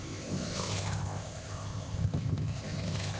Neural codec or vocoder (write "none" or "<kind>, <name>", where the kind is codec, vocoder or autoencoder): codec, ZipCodec